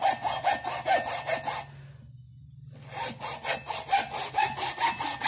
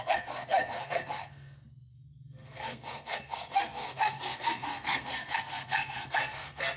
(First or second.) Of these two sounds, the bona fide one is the first